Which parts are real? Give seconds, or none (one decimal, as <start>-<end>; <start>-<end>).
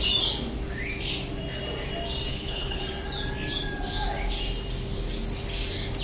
0.0-2.3; 2.8-6.0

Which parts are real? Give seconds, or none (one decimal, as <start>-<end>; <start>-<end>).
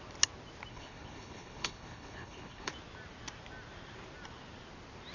0.0-0.7; 2.7-5.1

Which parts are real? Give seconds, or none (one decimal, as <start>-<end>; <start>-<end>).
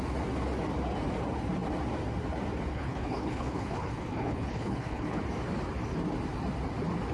0.0-2.7; 5.2-7.1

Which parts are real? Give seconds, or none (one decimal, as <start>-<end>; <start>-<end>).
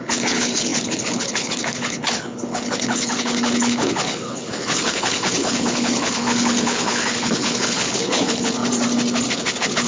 8.6-9.3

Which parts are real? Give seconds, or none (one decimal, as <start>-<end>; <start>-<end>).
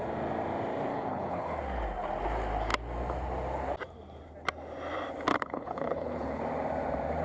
0.0-0.9; 1.6-5.3; 6.4-7.2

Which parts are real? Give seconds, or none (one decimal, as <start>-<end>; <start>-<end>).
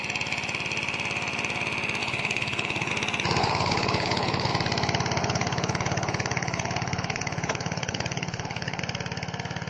0.0-2.0; 2.9-3.4; 4.5-5.2; 8.8-9.7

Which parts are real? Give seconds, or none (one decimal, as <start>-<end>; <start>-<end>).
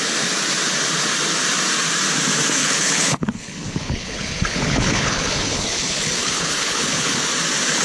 0.0-2.6; 7.3-7.8